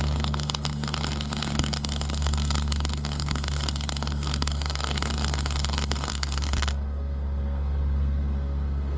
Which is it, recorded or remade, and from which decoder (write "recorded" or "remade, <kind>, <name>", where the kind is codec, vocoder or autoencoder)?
remade, codec, SNAC